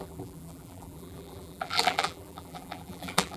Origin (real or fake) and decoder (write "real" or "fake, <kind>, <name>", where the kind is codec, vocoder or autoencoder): fake, vocoder, BigVGAN v2